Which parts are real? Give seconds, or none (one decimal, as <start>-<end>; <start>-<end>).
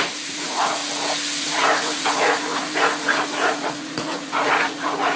0.8-1.4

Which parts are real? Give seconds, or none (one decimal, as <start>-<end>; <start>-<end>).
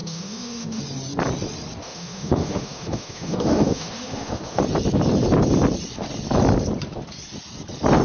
0.8-1.8; 4.6-8.0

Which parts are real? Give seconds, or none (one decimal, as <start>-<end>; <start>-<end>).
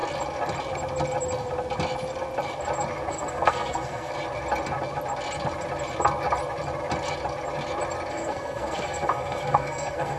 0.0-3.1; 4.1-8.1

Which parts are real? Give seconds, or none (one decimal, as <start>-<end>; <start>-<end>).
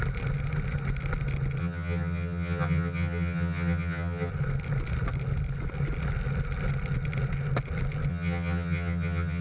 0.0-1.6; 4.3-8.1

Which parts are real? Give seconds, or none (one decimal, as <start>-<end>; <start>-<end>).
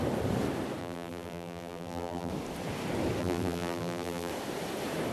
0.0-0.8; 2.3-3.2; 4.3-5.1